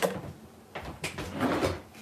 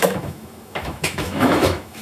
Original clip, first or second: first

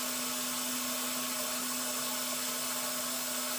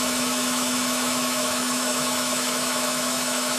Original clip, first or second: first